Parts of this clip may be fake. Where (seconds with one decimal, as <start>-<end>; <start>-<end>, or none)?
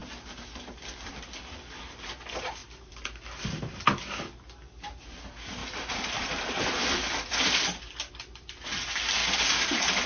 0.0-1.1; 5.6-7.8; 9.2-10.1